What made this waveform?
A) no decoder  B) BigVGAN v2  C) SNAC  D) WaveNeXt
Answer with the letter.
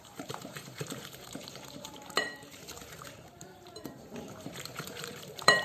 B